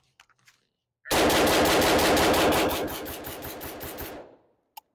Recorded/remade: recorded